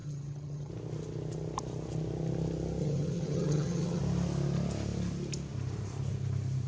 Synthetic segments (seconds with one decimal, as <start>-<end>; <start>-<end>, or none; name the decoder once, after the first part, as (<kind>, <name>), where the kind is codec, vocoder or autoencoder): 0.0-0.7 (vocoder, HiFi-GAN); 2.8-4.0